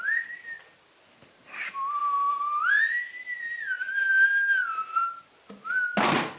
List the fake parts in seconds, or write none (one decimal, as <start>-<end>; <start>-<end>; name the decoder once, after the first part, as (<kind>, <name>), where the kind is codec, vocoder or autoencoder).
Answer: none